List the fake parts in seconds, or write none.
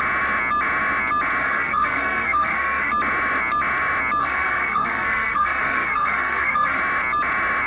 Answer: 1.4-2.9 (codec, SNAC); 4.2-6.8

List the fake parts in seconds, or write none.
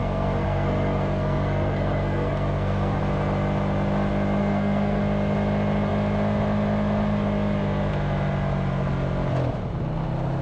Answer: 0.0-3.0 (codec, SNAC); 4.4-5.0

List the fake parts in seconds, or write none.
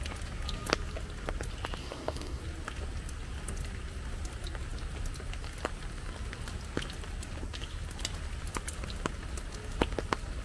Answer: 1.8-2.4 (codec, SNAC)